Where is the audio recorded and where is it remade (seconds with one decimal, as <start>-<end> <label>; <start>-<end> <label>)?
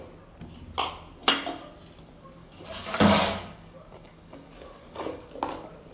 0.0-2.4 recorded; 2.4-5.3 remade; 5.3-5.9 recorded